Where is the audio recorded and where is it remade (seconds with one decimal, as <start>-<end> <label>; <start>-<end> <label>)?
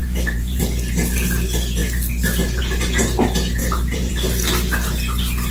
0.0-0.6 remade; 0.6-3.6 recorded; 3.6-4.1 remade; 4.1-5.5 recorded